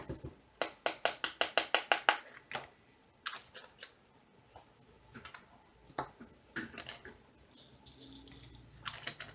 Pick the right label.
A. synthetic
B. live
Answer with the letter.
B